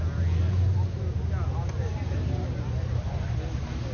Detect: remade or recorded recorded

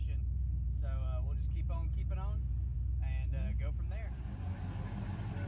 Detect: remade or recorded recorded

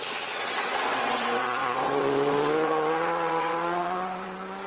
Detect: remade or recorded remade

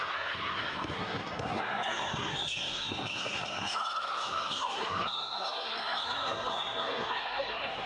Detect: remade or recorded remade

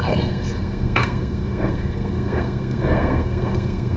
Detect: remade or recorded remade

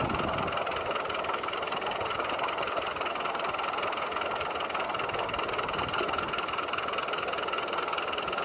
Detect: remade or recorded recorded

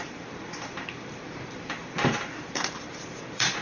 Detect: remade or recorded remade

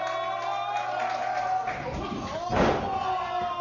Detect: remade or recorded recorded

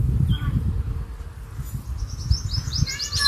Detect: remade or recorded recorded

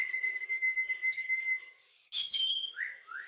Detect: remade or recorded remade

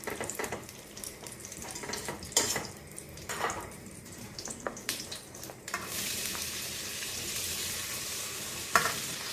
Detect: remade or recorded remade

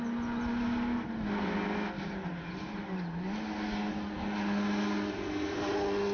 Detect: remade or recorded recorded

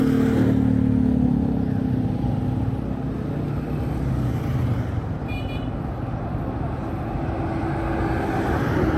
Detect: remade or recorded recorded